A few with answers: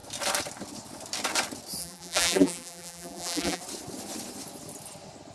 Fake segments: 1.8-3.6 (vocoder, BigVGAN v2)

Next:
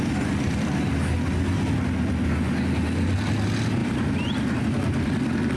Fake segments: none

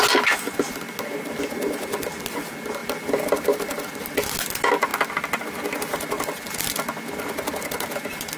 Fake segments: 2.8-3.9 (vocoder, BigVGAN v2)

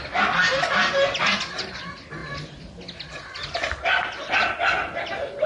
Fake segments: none

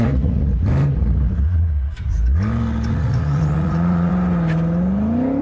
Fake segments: 0.0-0.5 (vocoder, Vocos); 1.0-2.1; 2.9-4.1

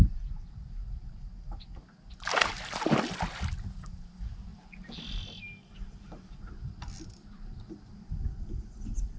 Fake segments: none

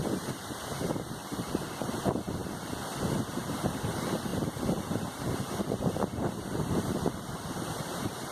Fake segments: 0.0-2.4 (vocoder, BigVGAN v2); 3.3-8.3